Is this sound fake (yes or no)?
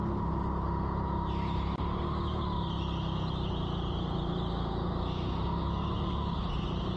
no